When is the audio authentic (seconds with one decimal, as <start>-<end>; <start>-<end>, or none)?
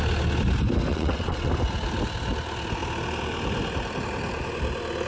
0.0-0.9; 1.5-5.1